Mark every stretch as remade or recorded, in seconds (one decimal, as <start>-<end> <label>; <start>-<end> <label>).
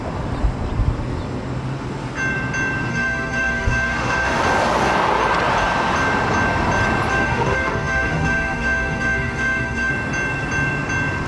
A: 0.0-2.9 recorded; 2.9-4.4 remade; 4.4-7.1 recorded; 7.1-9.9 remade; 9.9-11.3 recorded